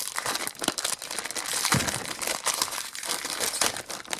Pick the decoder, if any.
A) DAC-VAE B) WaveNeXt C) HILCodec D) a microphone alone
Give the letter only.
D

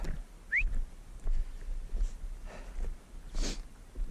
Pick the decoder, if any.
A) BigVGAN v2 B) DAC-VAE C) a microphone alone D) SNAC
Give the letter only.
C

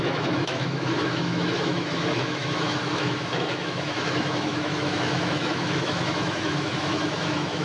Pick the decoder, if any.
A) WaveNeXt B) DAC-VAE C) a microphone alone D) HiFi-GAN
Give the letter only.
B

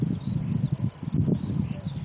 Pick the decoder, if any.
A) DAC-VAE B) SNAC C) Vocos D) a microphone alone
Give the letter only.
D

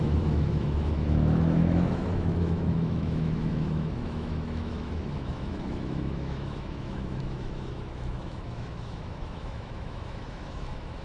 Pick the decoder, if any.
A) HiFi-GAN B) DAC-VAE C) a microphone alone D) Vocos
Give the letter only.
B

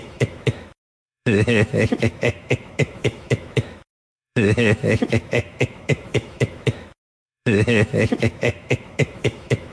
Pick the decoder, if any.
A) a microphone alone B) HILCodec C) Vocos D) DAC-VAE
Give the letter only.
D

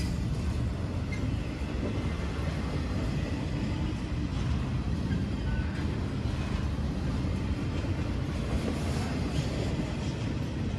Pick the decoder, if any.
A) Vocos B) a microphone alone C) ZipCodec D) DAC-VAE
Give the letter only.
B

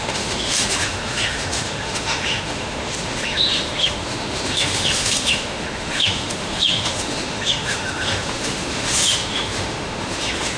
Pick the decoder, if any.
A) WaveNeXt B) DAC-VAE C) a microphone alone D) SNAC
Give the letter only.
B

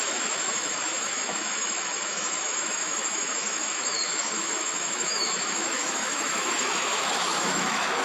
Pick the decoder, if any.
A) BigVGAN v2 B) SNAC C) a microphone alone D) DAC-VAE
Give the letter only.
D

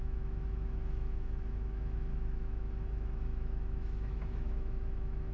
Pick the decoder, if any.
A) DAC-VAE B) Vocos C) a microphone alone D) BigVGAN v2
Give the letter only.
A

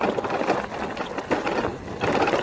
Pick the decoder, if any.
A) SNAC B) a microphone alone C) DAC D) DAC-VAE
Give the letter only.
B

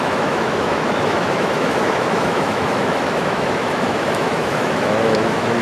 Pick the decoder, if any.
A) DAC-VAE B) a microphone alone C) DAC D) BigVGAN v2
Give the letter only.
A